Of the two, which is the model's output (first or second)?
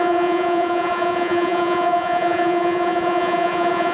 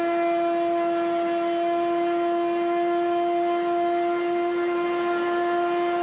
first